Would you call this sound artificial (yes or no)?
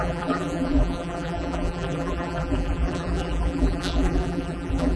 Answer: yes